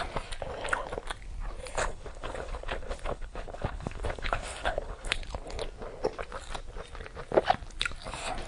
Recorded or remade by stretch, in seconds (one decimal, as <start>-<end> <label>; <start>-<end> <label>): 0.0-1.8 recorded; 1.8-5.2 remade; 5.2-8.5 recorded